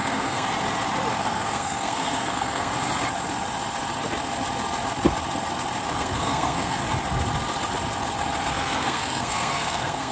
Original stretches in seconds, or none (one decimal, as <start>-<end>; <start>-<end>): 0.5-1.2; 2.7-5.9; 6.8-8.5